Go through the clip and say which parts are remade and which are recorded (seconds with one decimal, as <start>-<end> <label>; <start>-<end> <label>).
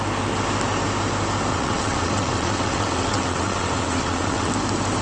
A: 0.0-1.5 recorded; 1.5-4.5 remade; 4.5-5.0 recorded